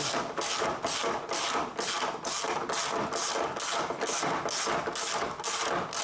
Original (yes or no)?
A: yes